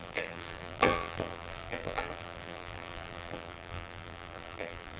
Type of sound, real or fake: fake